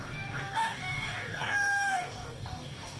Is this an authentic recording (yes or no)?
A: no